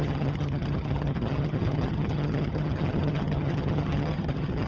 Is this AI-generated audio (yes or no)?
yes